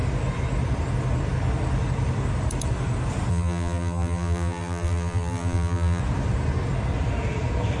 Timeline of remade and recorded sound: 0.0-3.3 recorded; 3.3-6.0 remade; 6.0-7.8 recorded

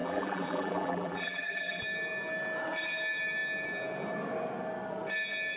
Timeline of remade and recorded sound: 0.0-1.8 remade; 1.8-5.6 recorded

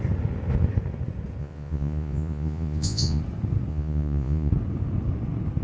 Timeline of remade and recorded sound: 0.0-1.4 recorded; 1.4-3.2 remade; 3.2-3.7 recorded; 3.7-4.5 remade; 4.5-5.6 recorded

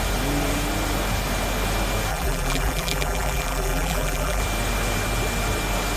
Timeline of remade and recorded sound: 0.0-2.1 recorded; 2.1-4.4 remade; 4.4-6.0 recorded

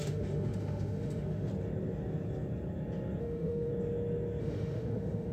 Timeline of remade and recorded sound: 0.0-1.5 remade; 1.5-3.2 recorded; 3.2-3.7 remade; 3.7-4.4 recorded; 4.4-5.3 remade

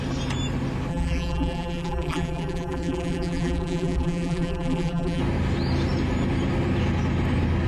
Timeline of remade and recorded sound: 0.0-0.9 recorded; 0.9-5.2 remade; 5.2-7.7 recorded

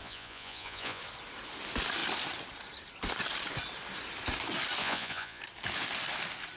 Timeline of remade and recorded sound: 0.0-1.0 remade; 1.0-4.8 recorded; 4.8-5.4 remade; 5.4-6.6 recorded